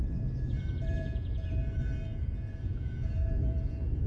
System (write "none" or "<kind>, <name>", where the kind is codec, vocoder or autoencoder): vocoder, Vocos